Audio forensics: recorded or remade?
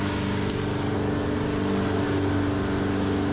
recorded